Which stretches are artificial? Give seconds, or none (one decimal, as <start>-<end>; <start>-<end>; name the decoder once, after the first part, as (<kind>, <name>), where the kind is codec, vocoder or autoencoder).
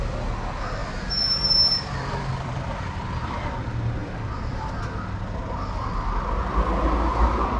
0.8-3.5 (vocoder, BigVGAN v2); 4.0-4.7